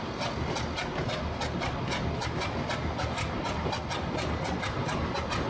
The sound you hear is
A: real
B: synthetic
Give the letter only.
A